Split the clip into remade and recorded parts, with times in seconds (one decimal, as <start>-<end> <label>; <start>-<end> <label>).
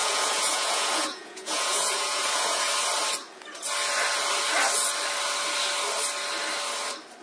0.0-2.7 remade; 2.7-7.2 recorded